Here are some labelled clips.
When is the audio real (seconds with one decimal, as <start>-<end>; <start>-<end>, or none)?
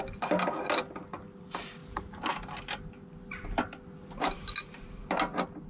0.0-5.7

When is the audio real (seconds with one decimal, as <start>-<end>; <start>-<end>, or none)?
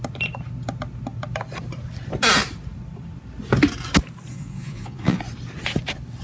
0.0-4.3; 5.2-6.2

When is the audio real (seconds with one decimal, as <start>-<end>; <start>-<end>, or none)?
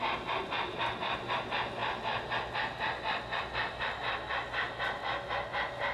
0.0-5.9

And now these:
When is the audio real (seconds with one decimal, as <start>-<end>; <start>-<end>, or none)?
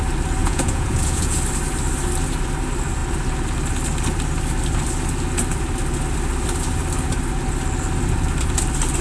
0.0-0.4; 1.4-9.0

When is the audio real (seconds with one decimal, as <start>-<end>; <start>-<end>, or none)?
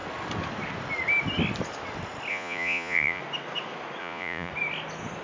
0.0-2.3; 3.2-4.0; 4.5-5.2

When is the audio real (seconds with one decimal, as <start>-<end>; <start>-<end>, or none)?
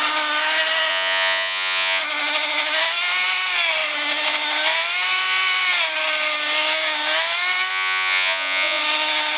0.0-0.9; 2.0-7.7; 8.8-9.4